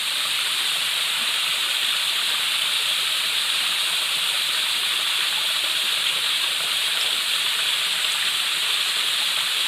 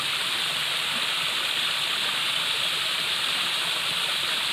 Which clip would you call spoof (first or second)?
first